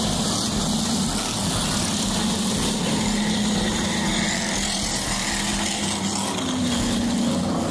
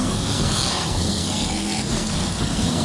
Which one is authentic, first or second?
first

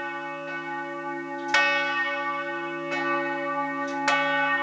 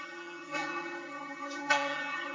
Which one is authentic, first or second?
first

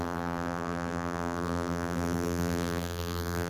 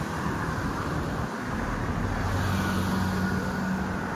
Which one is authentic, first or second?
second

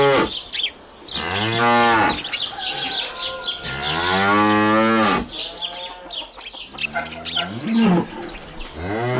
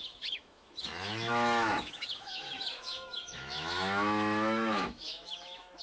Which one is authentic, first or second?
first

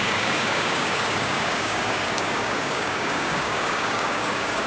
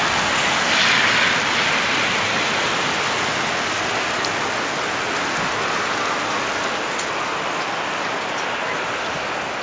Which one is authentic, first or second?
second